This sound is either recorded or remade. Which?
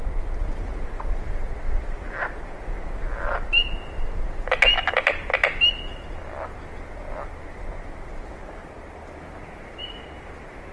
recorded